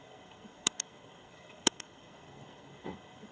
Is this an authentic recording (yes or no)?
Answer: no